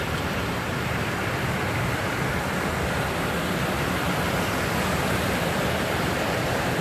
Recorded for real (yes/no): no